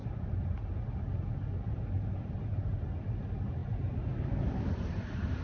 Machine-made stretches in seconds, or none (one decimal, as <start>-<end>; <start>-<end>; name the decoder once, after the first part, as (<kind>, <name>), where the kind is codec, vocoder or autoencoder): none